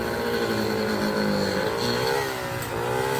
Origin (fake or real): real